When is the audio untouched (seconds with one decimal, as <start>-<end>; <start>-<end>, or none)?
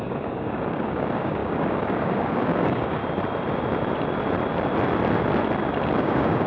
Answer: 3.0-6.0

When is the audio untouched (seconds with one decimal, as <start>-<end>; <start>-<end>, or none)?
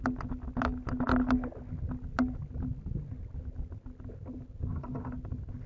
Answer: 0.0-5.7